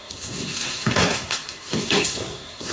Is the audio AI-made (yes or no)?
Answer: yes